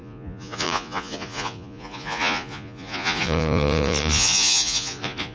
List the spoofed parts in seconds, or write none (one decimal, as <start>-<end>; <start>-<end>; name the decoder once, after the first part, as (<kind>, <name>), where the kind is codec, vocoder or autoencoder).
0.0-5.3 (vocoder, Vocos)